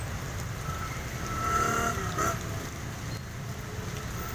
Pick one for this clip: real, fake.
real